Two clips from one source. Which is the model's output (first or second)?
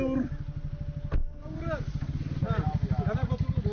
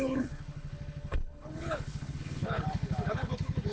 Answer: second